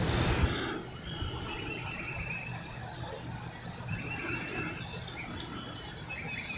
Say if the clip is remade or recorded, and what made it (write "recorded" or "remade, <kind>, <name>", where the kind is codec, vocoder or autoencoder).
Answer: recorded